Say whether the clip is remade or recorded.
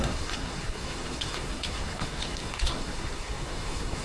remade